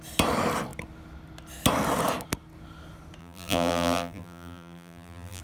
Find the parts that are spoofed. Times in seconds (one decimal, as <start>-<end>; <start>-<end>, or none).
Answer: 3.2-5.4